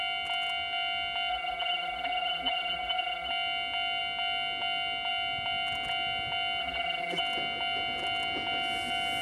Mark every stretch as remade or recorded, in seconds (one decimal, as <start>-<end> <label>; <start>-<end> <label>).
0.0-1.3 recorded; 1.3-3.3 remade; 3.3-6.6 recorded; 6.6-7.2 remade; 7.2-9.2 recorded